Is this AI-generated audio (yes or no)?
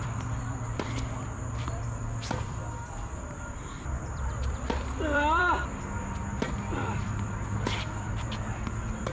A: yes